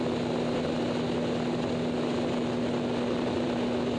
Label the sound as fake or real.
real